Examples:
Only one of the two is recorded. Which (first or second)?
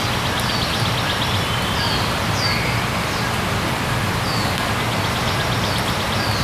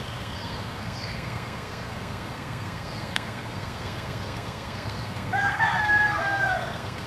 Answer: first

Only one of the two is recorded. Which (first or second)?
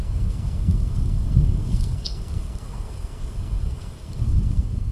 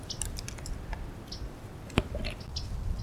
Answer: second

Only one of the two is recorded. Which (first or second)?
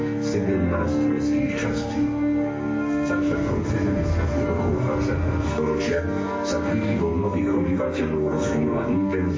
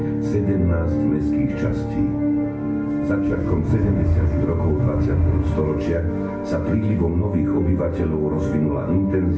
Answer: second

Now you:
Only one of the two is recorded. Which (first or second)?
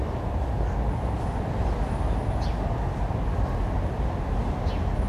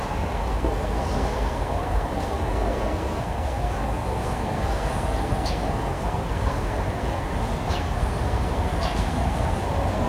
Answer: first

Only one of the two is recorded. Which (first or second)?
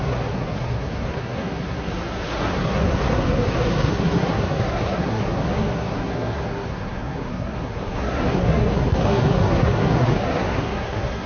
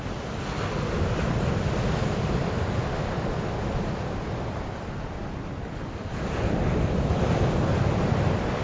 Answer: second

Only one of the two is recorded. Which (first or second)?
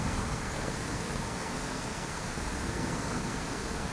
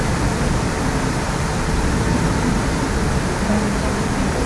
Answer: second